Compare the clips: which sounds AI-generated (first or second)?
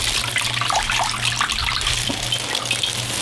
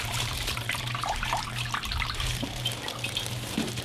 second